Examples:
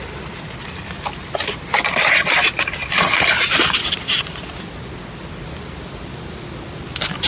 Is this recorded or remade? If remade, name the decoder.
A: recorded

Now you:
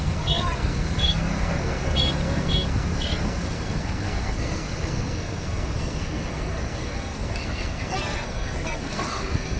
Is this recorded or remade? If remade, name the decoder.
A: remade, codec, SNAC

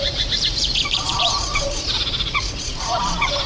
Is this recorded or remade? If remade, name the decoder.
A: remade, vocoder, Vocos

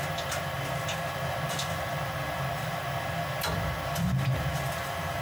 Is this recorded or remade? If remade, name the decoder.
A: remade, vocoder, BigVGAN v2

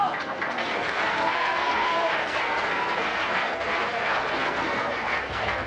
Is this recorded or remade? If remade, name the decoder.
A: remade, codec, SNAC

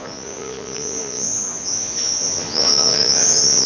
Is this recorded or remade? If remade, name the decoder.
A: remade, vocoder, Vocos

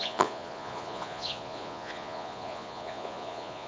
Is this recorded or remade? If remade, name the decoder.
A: remade, vocoder, Vocos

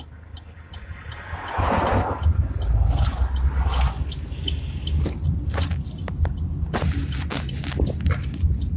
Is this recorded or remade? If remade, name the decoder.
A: recorded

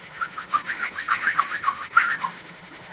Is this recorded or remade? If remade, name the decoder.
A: remade, autoencoder, DAC-VAE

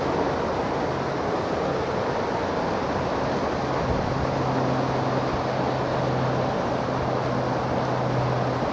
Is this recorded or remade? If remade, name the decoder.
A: recorded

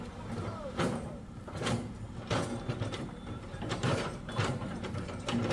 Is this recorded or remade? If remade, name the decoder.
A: remade, vocoder, BigVGAN v2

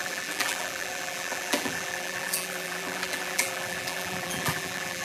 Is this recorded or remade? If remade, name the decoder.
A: remade, vocoder, BigVGAN v2